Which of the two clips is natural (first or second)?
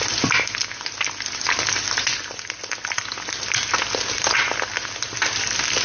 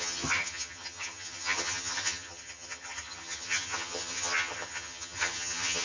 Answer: first